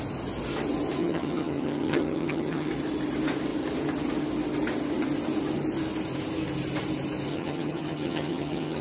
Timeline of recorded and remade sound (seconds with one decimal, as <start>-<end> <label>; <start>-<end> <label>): 0.0-1.0 recorded; 1.0-2.7 remade; 2.7-7.3 recorded; 7.3-8.8 remade